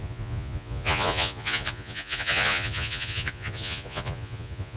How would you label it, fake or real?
fake